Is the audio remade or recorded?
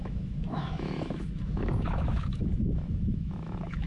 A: remade